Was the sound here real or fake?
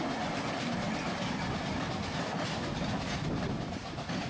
real